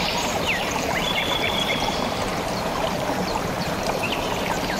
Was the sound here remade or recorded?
remade